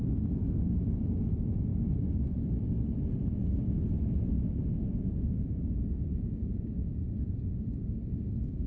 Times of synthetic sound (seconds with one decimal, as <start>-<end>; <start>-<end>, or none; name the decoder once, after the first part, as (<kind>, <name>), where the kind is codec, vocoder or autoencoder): 0.0-1.7 (vocoder, Vocos); 3.4-3.8; 4.7-8.7